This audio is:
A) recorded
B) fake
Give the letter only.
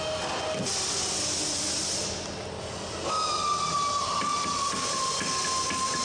A